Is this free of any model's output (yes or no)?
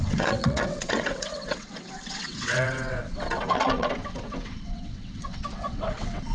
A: no